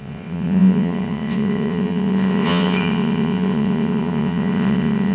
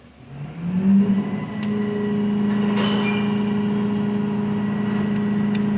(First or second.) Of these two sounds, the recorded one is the second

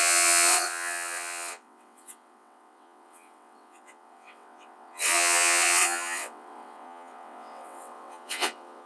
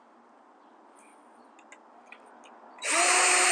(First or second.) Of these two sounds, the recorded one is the second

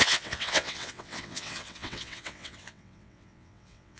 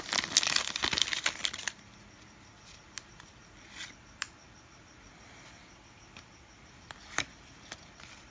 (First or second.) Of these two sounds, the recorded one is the second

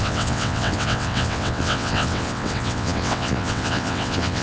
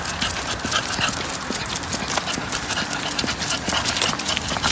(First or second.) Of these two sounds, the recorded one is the second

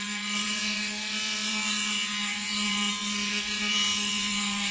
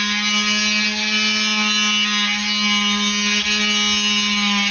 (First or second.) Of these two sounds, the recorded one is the second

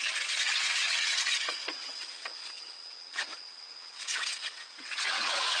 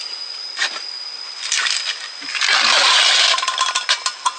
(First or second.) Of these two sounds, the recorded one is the second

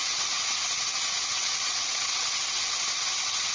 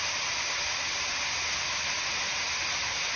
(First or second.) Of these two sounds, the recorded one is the second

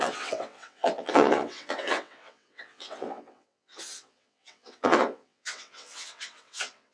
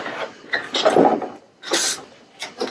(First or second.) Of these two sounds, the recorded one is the second